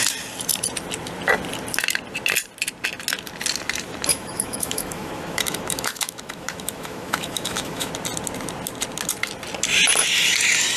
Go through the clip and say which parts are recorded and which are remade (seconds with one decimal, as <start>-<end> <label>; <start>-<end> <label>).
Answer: 0.0-4.1 recorded; 4.1-7.9 remade; 7.9-10.8 recorded